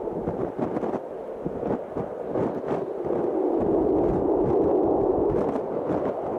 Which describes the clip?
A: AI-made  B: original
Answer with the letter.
B